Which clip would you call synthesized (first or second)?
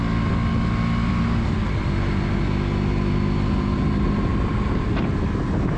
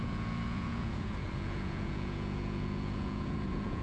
second